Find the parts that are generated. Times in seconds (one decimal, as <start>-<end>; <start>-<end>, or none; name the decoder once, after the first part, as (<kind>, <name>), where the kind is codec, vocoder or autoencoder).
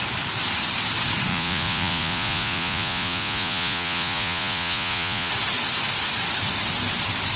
1.3-5.3 (vocoder, Vocos)